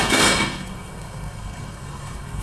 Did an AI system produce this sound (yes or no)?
yes